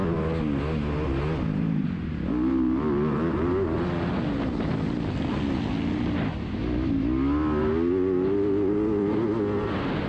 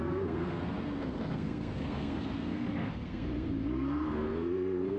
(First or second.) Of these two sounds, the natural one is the first